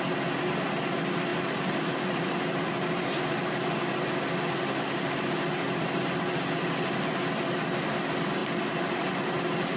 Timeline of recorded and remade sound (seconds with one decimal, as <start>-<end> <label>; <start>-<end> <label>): 0.0-9.8 recorded